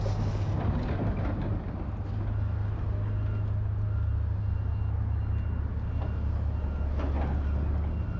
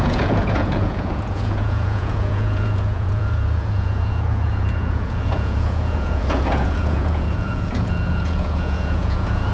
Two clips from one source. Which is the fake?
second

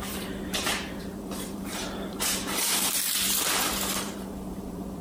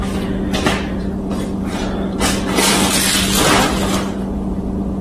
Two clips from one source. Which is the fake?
first